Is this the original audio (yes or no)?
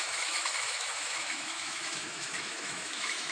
no